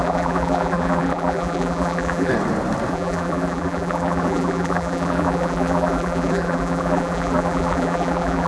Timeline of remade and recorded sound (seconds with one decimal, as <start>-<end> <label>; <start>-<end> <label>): 0.0-2.3 remade; 2.3-2.9 recorded; 2.9-8.5 remade